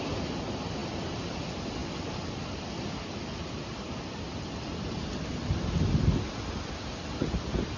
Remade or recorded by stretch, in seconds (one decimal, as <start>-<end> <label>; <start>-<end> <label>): 0.0-7.8 recorded